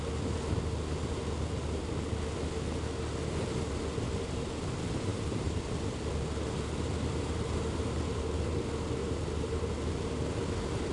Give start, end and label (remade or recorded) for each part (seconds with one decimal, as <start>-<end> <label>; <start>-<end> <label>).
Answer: 0.0-5.1 recorded; 5.1-5.7 remade; 5.7-9.0 recorded; 9.0-9.7 remade; 9.7-10.9 recorded

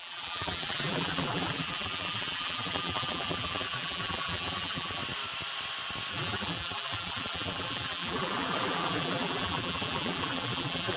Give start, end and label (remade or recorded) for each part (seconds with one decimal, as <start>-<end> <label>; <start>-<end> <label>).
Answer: 0.0-5.0 remade; 5.0-6.1 recorded; 6.1-11.0 remade

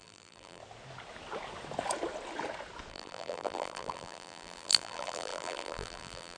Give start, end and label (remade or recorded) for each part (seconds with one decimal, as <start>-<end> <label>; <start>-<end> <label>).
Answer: 0.0-0.6 remade; 0.6-2.9 recorded; 2.9-6.4 remade

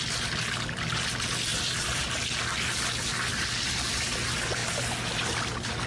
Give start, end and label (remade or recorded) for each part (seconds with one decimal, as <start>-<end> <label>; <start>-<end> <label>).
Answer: 0.0-1.5 recorded; 1.5-2.2 remade; 2.2-5.9 recorded

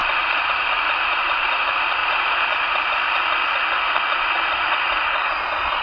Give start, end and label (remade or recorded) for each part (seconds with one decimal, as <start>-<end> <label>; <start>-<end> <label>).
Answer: 0.0-2.0 remade; 2.0-5.8 recorded

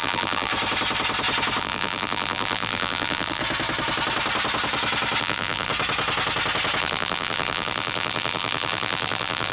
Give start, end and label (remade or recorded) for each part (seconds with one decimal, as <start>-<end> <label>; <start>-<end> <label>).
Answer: 0.0-0.5 remade; 0.5-1.6 recorded; 1.6-3.4 remade; 3.4-5.2 recorded; 5.2-5.7 remade; 5.7-6.8 recorded; 6.8-9.5 remade